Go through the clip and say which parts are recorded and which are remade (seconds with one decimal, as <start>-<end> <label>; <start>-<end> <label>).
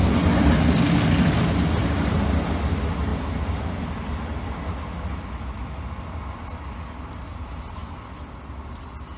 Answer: 0.0-9.2 recorded